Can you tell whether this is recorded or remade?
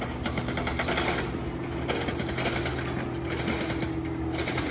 recorded